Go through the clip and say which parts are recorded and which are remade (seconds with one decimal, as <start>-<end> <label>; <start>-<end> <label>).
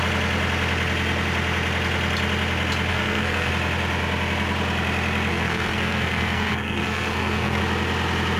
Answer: 0.0-2.9 recorded; 2.9-3.5 remade; 3.5-5.3 recorded; 5.3-7.6 remade; 7.6-8.4 recorded